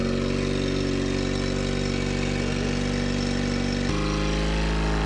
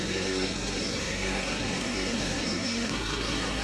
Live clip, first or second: first